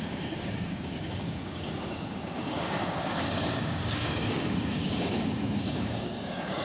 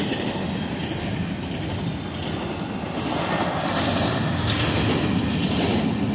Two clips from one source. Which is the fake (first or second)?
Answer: first